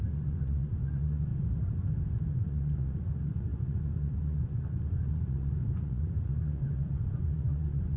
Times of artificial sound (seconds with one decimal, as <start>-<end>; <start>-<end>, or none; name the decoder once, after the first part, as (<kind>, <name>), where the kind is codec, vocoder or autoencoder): 0.0-1.3 (vocoder, Vocos); 2.3-8.0